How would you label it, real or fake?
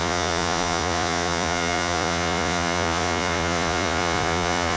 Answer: fake